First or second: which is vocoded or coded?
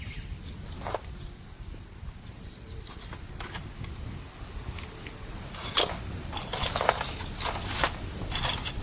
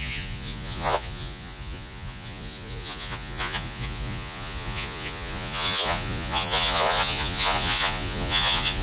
second